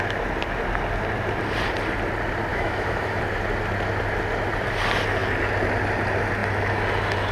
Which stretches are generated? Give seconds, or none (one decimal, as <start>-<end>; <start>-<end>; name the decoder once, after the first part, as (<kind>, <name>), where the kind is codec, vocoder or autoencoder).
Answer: 2.5-3.2 (autoencoder, DAC-VAE)